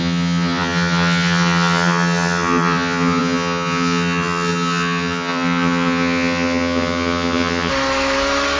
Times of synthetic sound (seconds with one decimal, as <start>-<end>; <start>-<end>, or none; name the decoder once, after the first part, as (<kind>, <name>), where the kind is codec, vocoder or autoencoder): 0.0-7.7 (vocoder, HiFi-GAN)